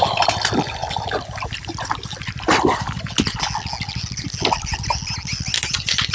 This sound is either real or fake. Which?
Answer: real